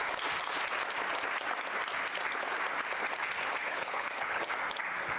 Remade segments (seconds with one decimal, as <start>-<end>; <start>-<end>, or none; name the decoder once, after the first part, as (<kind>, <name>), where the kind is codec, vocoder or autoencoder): 3.6-4.4 (codec, HILCodec)